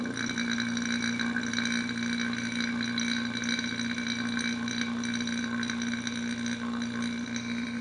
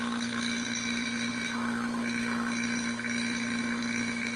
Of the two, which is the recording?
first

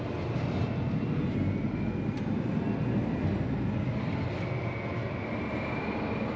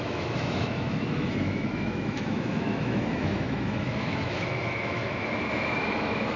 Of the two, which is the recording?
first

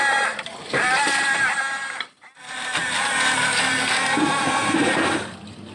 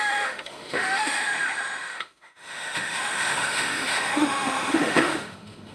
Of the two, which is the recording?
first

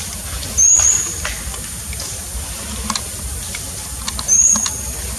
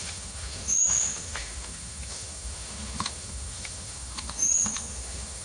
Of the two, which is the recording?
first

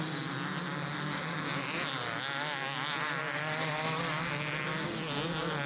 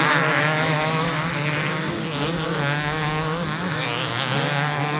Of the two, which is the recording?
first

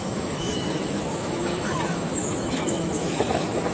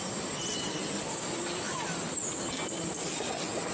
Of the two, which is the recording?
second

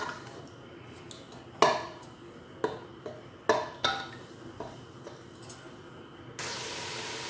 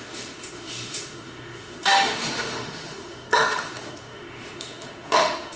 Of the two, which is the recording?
first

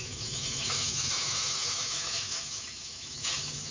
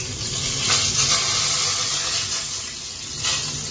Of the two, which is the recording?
second